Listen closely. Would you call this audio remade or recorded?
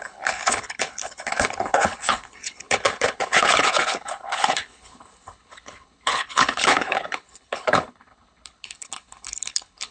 remade